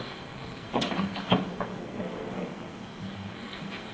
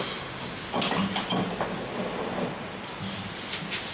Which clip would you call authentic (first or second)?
second